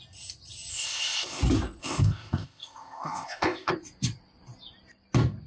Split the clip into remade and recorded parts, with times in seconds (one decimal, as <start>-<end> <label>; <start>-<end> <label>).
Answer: 0.0-0.7 recorded; 0.7-1.4 remade; 1.4-1.8 recorded; 1.8-3.7 remade; 3.7-5.5 recorded